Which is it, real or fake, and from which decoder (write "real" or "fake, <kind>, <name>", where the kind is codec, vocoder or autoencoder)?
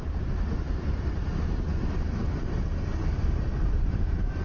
fake, vocoder, BigVGAN v2